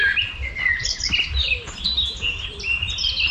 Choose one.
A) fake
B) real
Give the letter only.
B